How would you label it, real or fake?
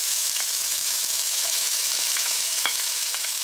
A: fake